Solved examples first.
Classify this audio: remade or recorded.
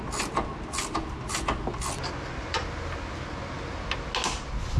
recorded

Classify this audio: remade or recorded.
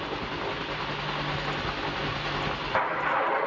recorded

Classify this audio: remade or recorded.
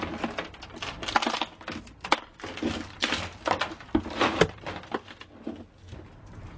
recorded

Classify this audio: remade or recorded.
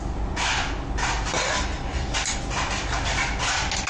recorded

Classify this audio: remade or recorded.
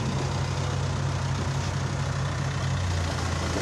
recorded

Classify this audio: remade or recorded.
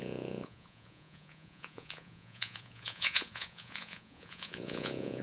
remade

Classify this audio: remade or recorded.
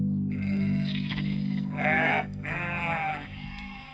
remade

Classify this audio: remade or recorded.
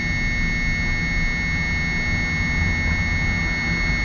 recorded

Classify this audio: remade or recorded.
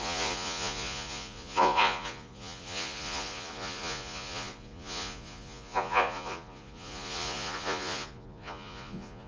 remade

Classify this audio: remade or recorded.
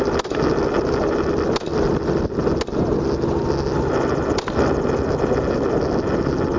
recorded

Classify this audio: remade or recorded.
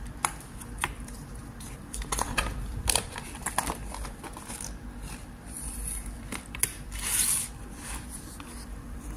remade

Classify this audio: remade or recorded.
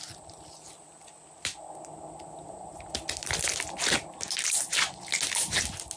recorded